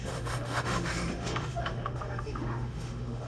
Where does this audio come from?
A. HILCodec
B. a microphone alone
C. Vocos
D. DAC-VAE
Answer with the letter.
D